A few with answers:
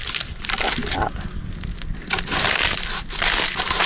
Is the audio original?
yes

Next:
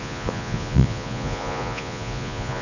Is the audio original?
no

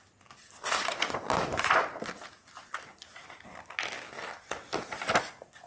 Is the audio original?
yes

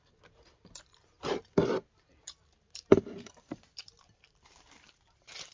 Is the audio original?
no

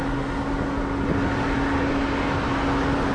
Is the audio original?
yes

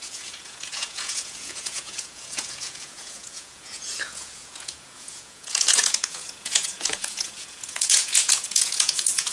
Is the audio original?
no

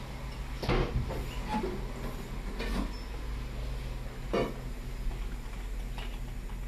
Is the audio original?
yes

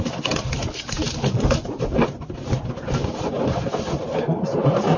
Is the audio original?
no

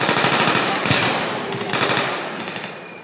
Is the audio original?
no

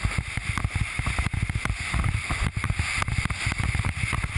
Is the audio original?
yes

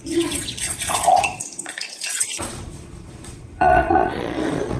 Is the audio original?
no